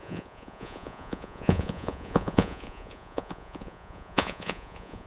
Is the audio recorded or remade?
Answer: remade